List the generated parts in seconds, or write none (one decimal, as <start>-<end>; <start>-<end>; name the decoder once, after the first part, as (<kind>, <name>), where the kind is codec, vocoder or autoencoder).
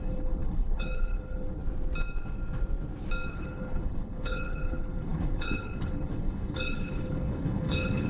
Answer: 0.0-1.6 (codec, HILCodec); 3.3-8.1